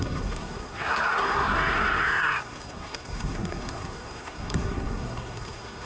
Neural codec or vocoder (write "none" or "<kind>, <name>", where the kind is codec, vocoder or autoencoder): codec, SNAC